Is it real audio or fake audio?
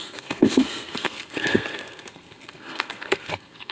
fake